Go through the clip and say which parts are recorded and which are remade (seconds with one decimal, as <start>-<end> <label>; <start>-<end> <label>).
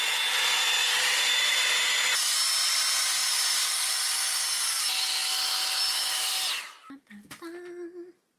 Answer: 0.0-0.8 recorded; 0.8-1.8 remade; 1.8-3.2 recorded; 3.2-4.1 remade; 4.1-8.4 recorded